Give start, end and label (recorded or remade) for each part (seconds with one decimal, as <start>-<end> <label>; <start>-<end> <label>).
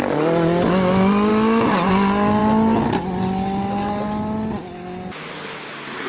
0.0-6.1 recorded